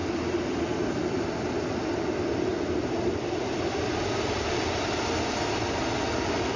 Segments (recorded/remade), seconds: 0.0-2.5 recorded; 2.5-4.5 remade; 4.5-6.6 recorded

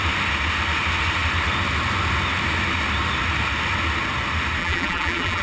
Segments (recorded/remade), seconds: 0.0-4.6 recorded; 4.6-5.4 remade

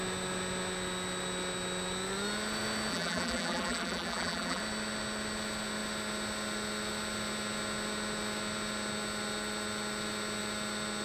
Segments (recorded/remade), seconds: 0.0-2.9 recorded; 2.9-4.6 remade; 4.6-11.0 recorded

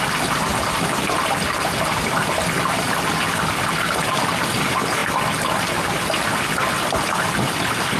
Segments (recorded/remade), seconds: 0.0-8.0 recorded

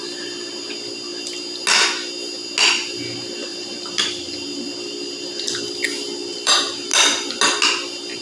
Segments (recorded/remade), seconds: 0.0-3.5 recorded; 3.5-6.5 remade; 6.5-8.2 recorded